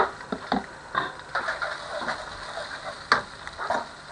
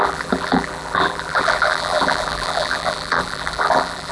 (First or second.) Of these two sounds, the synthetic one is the second